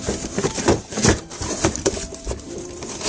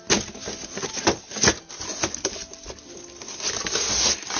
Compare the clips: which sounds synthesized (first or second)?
first